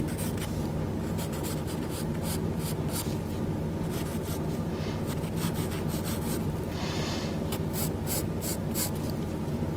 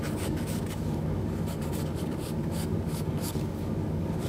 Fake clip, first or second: second